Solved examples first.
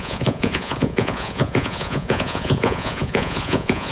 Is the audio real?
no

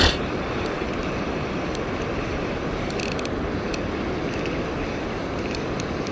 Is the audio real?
yes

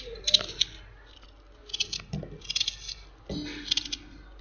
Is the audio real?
yes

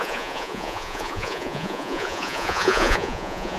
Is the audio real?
no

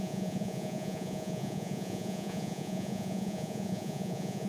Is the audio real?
no